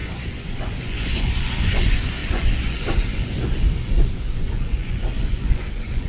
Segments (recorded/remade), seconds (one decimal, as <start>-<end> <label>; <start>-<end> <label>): 0.0-6.1 remade